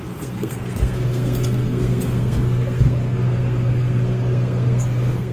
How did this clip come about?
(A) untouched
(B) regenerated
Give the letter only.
B